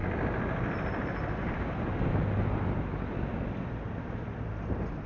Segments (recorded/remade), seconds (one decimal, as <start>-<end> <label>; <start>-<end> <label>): 0.0-5.1 recorded

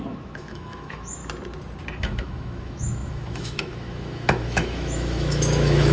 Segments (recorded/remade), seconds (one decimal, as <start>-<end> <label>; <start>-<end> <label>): 0.0-1.2 remade; 1.2-2.0 recorded; 2.0-5.9 remade

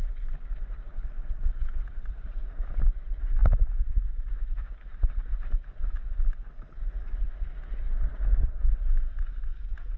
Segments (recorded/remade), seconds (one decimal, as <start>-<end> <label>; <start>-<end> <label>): 0.0-3.4 recorded; 3.4-4.9 remade; 4.9-10.0 recorded

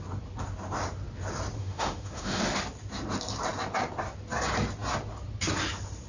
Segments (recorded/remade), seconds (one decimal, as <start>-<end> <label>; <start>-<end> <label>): 0.0-1.6 recorded; 1.6-2.4 remade; 2.4-6.1 recorded

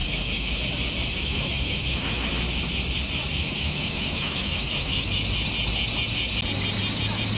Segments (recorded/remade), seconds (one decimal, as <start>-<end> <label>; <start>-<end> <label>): 0.0-0.6 remade; 0.6-1.1 recorded; 1.1-2.3 remade; 2.3-3.3 recorded; 3.3-5.2 remade; 5.2-7.4 recorded

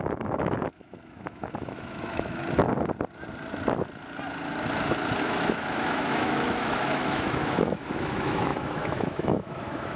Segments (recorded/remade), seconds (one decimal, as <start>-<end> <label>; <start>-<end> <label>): 0.0-2.4 remade; 2.4-5.2 recorded; 5.2-10.0 remade

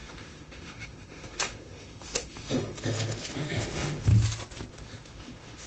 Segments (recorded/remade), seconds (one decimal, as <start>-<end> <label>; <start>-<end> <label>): 0.0-4.1 remade; 4.1-4.7 recorded; 4.7-5.7 remade